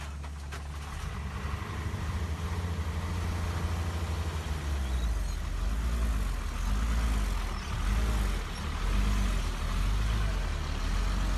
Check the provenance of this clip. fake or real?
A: real